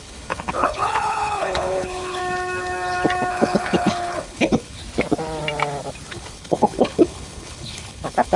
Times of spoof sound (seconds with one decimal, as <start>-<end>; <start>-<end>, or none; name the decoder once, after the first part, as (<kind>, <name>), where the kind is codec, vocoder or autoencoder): 0.0-2.2 (codec, HILCodec); 3.3-4.8; 6.1-8.4